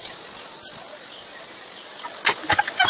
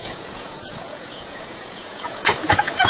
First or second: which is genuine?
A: first